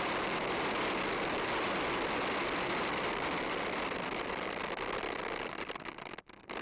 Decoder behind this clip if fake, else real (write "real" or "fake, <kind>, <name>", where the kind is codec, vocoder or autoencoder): real